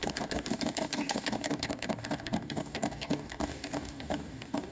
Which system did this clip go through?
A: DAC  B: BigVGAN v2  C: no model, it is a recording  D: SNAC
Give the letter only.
A